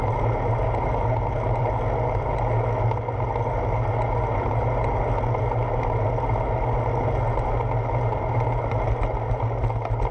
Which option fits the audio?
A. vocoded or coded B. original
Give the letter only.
B